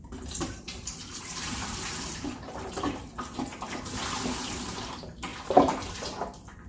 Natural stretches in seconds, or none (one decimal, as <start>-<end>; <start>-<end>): 4.0-4.7